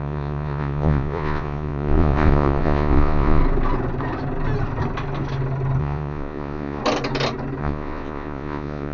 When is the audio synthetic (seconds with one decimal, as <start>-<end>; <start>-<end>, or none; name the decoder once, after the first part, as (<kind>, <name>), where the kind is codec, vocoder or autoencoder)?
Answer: 0.0-3.4 (vocoder, Vocos); 5.8-6.8; 7.6-8.9